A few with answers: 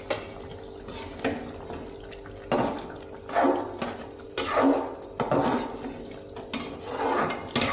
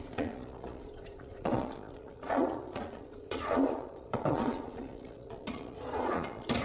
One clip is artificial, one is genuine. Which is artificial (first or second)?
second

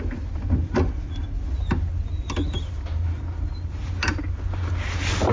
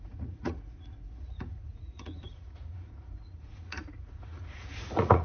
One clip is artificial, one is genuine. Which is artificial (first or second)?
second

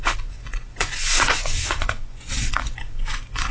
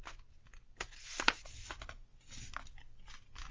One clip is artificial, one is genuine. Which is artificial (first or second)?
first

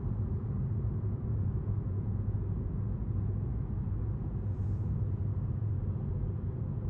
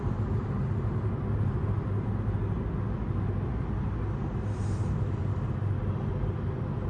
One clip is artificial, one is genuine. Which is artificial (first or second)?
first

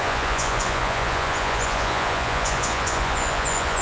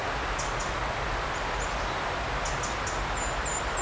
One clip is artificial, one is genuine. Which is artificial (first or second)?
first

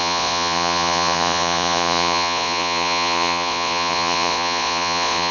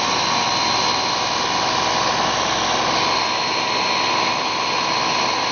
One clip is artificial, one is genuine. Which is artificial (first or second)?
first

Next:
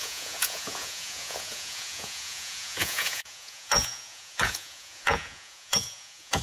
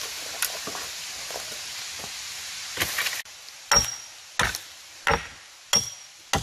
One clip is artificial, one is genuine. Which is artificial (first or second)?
first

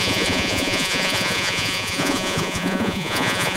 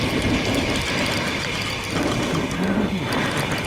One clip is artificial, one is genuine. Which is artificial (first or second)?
first